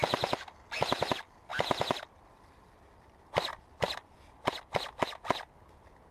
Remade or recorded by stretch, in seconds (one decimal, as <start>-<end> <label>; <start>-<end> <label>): 0.0-6.1 recorded